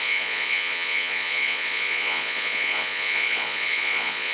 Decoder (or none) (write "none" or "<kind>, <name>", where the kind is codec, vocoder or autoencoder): vocoder, Vocos